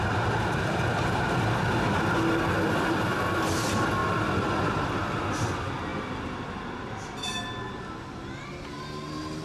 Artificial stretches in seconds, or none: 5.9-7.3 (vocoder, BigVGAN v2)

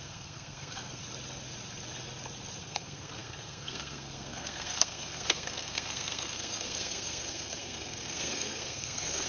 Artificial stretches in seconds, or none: 0.0-1.0 (codec, SNAC); 2.6-9.3

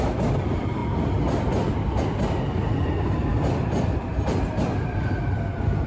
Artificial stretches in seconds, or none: 0.0-0.8 (vocoder, BigVGAN v2); 2.0-5.9

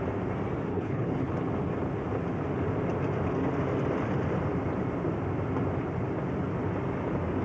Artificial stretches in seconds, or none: 0.7-1.3 (codec, HILCodec)

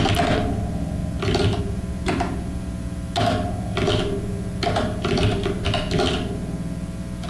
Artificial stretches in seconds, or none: none

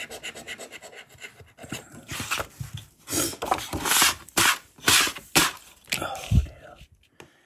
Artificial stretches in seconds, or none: 0.0-2.1 (vocoder, BigVGAN v2); 4.2-6.4

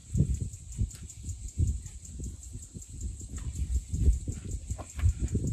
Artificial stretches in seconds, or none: none